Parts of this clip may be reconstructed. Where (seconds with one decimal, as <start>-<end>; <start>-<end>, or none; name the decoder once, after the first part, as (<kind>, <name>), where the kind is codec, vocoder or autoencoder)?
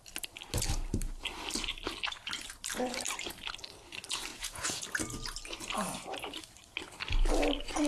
4.3-4.8 (vocoder, Vocos)